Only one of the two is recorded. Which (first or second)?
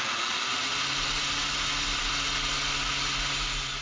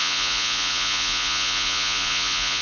first